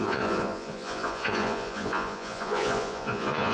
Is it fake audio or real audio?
fake